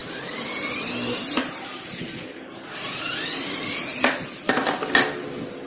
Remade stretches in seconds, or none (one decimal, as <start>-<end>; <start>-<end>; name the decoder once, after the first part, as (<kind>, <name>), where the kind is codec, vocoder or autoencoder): 0.0-3.4 (vocoder, BigVGAN v2)